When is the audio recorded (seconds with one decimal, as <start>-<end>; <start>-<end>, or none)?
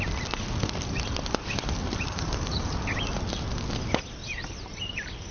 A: 0.0-1.8; 3.3-4.2